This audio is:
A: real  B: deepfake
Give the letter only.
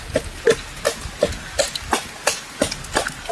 A